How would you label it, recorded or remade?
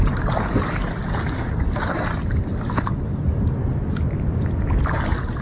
recorded